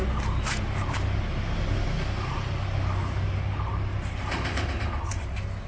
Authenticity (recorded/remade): recorded